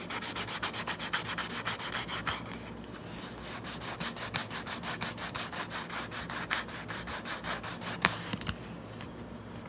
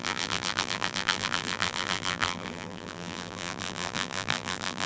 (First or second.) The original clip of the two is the first